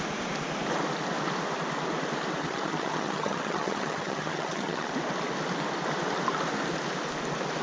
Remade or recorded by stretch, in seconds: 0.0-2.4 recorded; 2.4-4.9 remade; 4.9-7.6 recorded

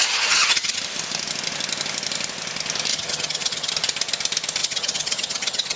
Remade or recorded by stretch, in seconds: 0.0-0.8 remade; 0.8-2.9 recorded; 2.9-3.7 remade; 3.7-4.6 recorded; 4.6-5.8 remade

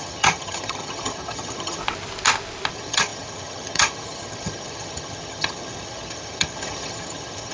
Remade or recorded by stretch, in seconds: 0.0-1.8 remade; 1.8-2.7 recorded; 2.7-7.5 remade

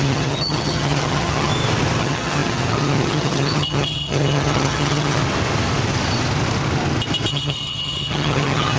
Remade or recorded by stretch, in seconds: 0.0-1.5 remade; 1.5-2.0 recorded; 2.0-5.2 remade; 5.2-7.3 recorded; 7.3-8.8 remade

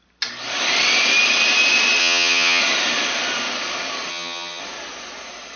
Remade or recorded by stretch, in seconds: 0.0-2.0 recorded; 2.0-2.6 remade; 2.6-4.1 recorded; 4.1-4.6 remade; 4.6-5.6 recorded

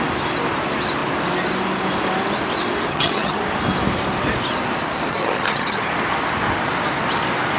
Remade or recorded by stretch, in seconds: 0.0-2.9 recorded; 2.9-3.4 remade; 3.4-5.1 recorded; 5.1-5.9 remade; 5.9-7.6 recorded

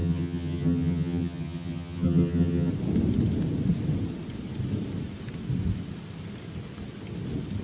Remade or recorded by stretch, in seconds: 0.0-2.7 remade; 2.7-7.6 recorded